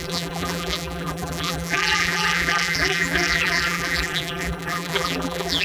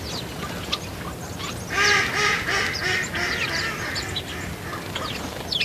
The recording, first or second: second